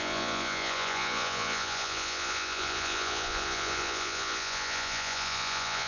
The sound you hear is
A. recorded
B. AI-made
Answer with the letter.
B